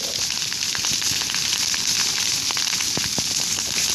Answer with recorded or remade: recorded